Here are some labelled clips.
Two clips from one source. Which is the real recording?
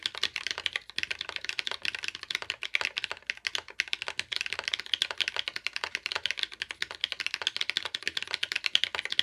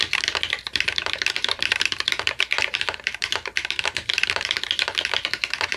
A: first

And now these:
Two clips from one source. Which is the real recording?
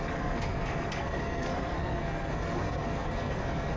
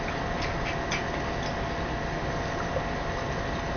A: second